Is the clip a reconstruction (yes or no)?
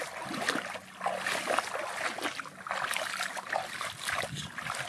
no